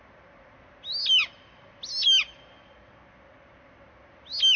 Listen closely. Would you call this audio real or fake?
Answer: real